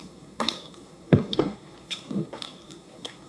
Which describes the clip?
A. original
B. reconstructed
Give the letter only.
B